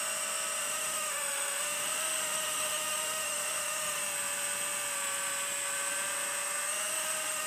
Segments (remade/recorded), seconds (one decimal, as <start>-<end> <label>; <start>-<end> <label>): 0.0-0.6 recorded; 0.6-4.0 remade; 4.0-6.9 recorded; 6.9-7.5 remade